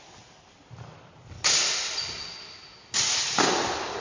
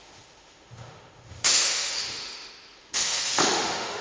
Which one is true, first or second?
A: first